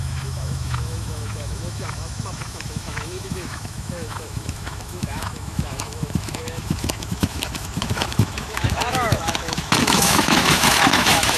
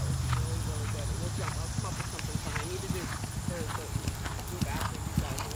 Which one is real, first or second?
second